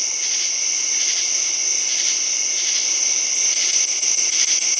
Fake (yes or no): no